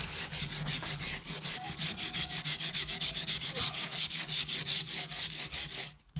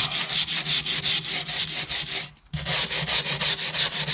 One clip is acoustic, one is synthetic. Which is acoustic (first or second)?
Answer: second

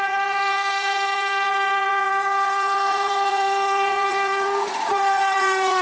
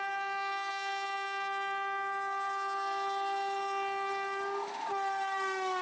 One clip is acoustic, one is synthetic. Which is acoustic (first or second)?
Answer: second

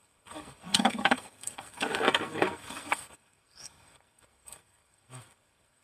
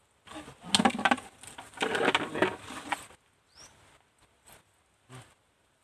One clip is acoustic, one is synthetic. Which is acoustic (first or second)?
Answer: second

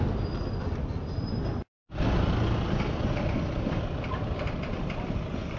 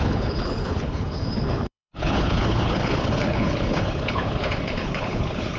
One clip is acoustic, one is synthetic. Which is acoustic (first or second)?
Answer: first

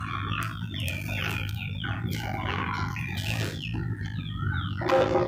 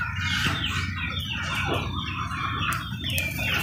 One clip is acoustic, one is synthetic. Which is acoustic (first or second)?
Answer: second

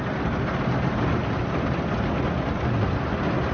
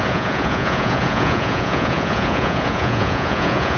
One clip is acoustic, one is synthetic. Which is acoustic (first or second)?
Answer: first